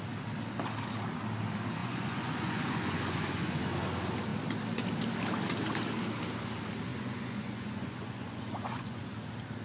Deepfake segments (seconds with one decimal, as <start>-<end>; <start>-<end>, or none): 1.8-3.6; 6.9-9.0